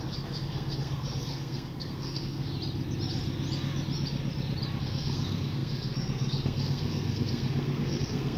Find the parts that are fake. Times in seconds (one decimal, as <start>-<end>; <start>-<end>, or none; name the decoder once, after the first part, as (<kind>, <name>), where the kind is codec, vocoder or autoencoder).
0.0-2.5 (codec, SNAC); 4.8-8.4